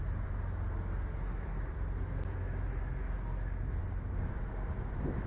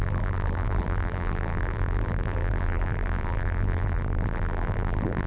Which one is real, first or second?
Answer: first